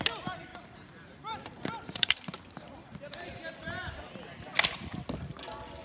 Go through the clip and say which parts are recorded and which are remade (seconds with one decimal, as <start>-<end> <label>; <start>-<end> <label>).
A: 0.0-0.5 recorded; 0.5-4.0 remade; 4.0-5.8 recorded